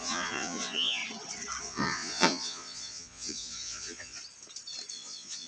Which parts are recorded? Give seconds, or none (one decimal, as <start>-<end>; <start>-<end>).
1.0-1.6; 4.2-4.9